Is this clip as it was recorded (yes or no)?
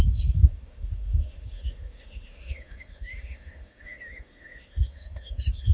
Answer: no